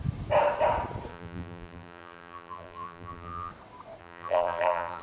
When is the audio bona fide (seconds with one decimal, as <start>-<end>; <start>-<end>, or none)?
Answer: 0.0-1.1; 3.5-4.0